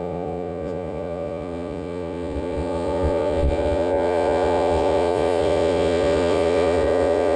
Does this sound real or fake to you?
fake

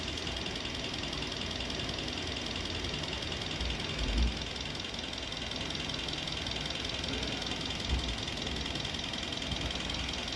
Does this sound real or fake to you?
real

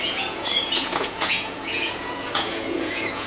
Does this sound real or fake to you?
fake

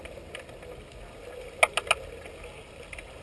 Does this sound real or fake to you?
real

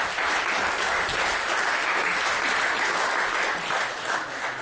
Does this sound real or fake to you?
real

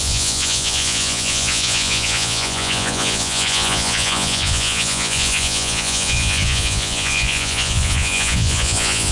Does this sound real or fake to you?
fake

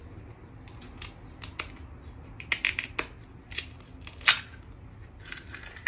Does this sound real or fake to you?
real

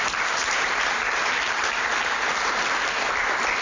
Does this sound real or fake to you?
real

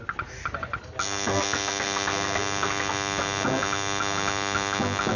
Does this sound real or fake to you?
real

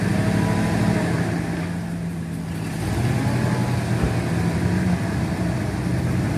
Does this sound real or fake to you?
real